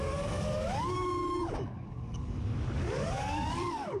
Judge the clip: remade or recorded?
remade